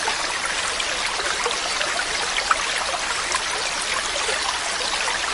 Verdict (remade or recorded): recorded